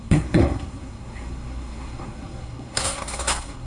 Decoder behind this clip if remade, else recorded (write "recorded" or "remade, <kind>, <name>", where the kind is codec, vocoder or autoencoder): remade, codec, SNAC